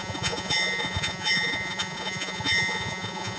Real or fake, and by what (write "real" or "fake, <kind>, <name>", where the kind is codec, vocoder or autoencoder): fake, vocoder, Vocos